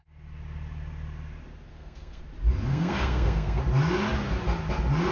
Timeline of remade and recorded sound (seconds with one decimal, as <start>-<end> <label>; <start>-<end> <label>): 0.0-1.7 recorded; 1.7-2.2 remade; 2.2-2.7 recorded; 2.7-3.6 remade; 3.6-5.1 recorded